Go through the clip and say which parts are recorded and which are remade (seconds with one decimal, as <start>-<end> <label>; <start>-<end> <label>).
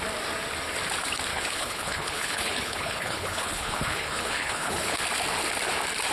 0.0-1.3 recorded; 1.3-5.0 remade; 5.0-6.1 recorded